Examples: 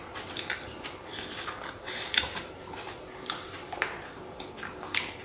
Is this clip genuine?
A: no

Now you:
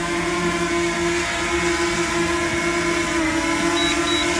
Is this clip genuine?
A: yes